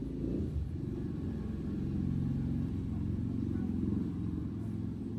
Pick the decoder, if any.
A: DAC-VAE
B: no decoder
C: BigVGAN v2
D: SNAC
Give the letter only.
B